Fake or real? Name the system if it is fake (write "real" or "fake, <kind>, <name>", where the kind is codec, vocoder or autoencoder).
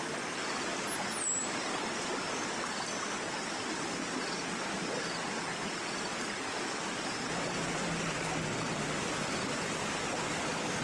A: real